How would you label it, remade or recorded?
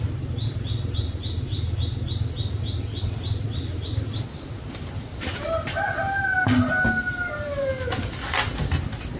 recorded